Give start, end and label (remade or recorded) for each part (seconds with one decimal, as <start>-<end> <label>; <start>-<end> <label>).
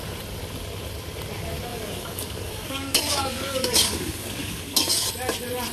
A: 0.0-1.7 recorded; 1.7-5.1 remade; 5.1-5.7 recorded